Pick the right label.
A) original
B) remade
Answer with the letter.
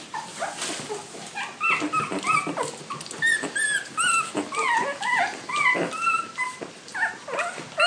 A